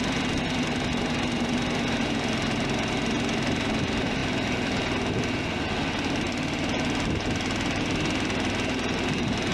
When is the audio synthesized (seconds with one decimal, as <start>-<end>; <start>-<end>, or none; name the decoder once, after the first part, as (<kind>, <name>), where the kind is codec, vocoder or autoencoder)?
none